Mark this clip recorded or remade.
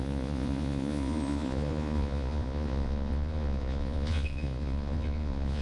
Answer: remade